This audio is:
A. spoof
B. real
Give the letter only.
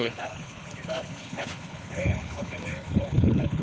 A